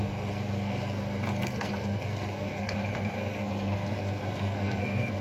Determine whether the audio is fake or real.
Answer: fake